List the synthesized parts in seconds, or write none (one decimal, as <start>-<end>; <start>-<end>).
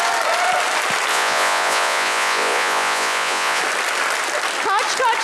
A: 1.1-3.6